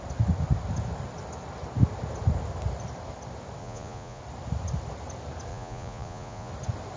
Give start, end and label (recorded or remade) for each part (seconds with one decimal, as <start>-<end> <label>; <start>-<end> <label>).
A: 0.0-3.6 recorded; 3.6-4.2 remade; 4.2-5.5 recorded; 5.5-6.5 remade; 6.5-7.0 recorded